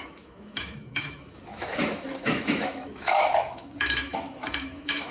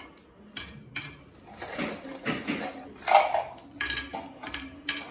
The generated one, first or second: first